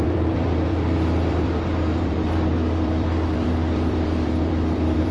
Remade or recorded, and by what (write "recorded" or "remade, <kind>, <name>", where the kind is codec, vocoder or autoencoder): remade, vocoder, BigVGAN v2